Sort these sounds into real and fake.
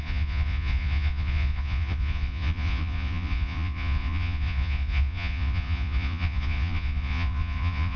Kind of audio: fake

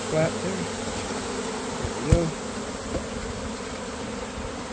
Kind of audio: real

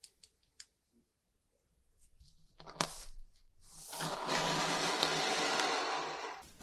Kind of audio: real